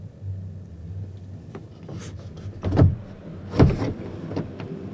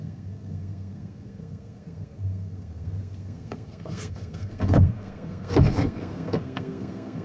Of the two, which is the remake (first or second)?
second